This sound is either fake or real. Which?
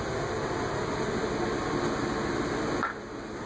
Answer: real